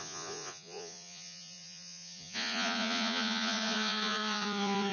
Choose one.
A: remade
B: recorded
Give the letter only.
A